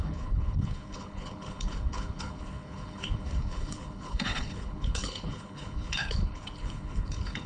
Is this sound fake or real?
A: fake